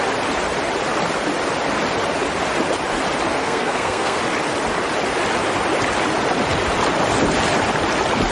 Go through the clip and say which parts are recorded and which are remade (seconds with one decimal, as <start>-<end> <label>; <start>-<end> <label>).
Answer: 0.0-3.4 recorded; 3.4-4.2 remade; 4.2-8.3 recorded